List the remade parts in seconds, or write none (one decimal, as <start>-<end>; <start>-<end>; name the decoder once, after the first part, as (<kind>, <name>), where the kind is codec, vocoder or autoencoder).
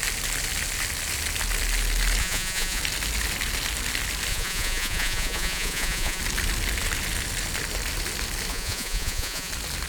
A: 2.2-2.8 (vocoder, Vocos); 4.3-6.2; 8.5-9.5